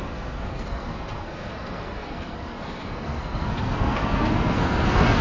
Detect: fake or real fake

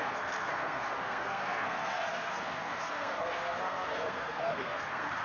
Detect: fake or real fake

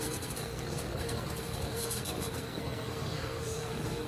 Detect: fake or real fake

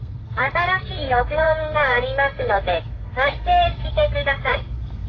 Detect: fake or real fake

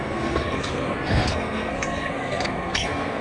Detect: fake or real fake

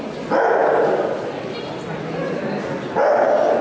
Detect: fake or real real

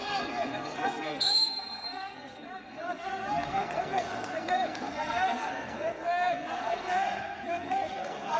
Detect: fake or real fake